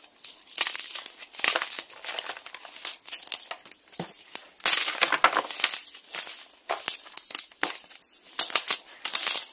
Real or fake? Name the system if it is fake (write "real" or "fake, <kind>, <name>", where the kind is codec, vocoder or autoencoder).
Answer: real